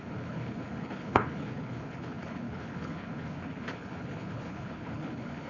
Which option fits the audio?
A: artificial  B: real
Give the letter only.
A